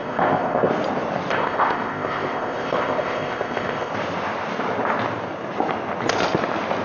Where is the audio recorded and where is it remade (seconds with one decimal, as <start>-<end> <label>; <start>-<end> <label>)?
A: 0.0-0.7 remade; 0.7-1.3 recorded; 1.3-3.9 remade; 3.9-6.8 recorded